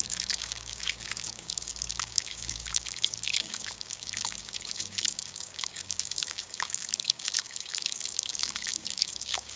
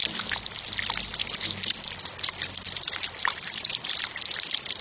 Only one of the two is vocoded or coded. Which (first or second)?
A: first